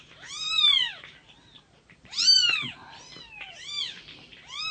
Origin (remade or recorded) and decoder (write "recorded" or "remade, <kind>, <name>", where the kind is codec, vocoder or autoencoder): remade, vocoder, BigVGAN v2